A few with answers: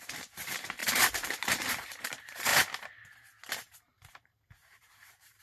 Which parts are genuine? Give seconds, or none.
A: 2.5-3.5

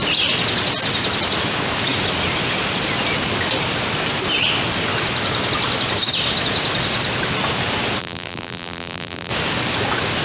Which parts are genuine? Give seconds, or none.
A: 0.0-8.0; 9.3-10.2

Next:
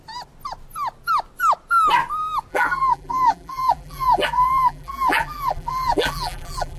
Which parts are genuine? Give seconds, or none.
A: 0.0-2.5

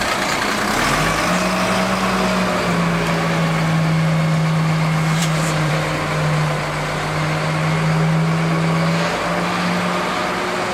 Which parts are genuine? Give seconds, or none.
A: 0.0-5.2; 5.7-10.7

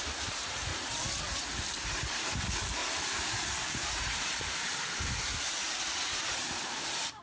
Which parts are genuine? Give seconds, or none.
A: 0.7-1.2

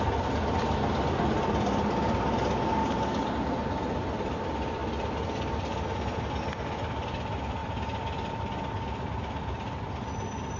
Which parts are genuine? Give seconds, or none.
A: 0.0-10.6

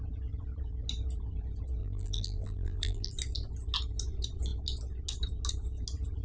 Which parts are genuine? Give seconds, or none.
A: 0.0-1.8; 3.1-6.2

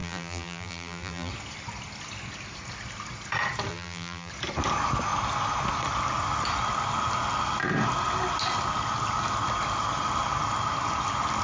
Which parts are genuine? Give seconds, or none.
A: 1.3-3.7; 4.3-11.4